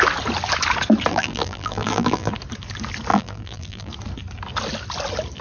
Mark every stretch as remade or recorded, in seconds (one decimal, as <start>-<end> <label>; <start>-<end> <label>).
0.0-1.1 recorded; 1.1-2.3 remade; 2.3-3.1 recorded; 3.1-3.9 remade; 3.9-5.4 recorded